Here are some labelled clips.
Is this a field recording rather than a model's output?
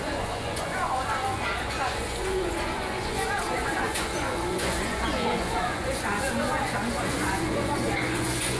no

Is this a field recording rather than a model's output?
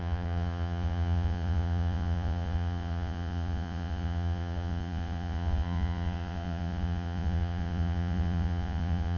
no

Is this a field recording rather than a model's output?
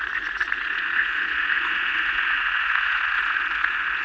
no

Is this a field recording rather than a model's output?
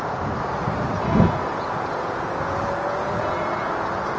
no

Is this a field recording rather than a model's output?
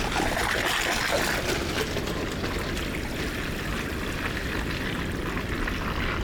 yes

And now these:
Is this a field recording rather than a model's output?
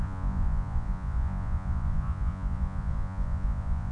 no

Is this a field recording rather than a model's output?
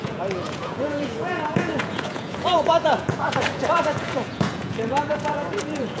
no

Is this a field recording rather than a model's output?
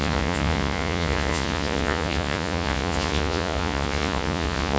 no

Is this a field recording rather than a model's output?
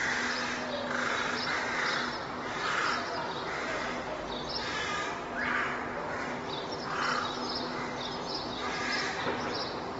yes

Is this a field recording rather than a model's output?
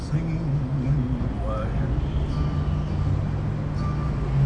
yes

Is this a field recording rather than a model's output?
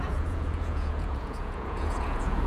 no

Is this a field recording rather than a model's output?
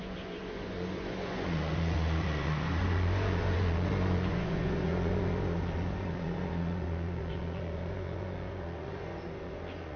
no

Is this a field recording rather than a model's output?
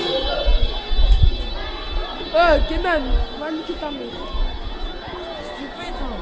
yes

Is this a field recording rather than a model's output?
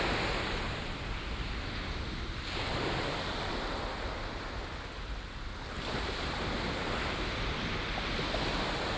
yes